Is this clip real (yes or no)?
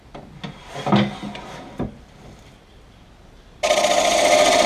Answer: yes